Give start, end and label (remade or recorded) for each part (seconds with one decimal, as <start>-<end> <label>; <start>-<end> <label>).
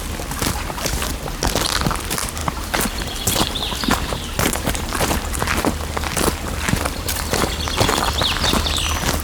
0.0-2.4 recorded; 2.4-5.4 remade; 5.4-6.7 recorded; 6.7-7.5 remade; 7.5-9.2 recorded